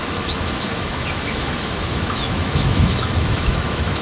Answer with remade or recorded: remade